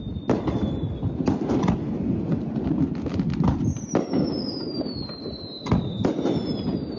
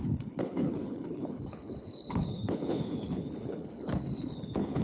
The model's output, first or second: second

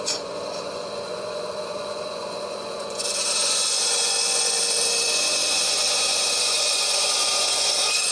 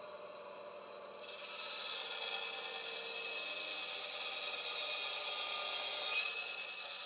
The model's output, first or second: first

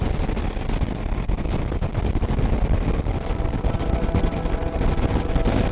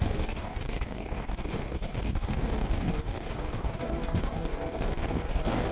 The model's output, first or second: second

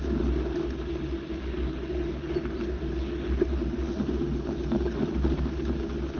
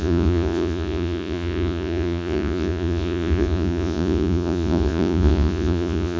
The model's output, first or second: second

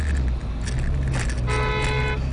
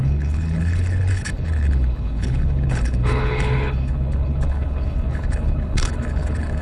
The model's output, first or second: second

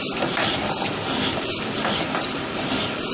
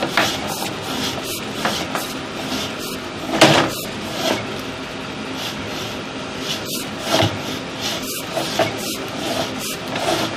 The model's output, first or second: first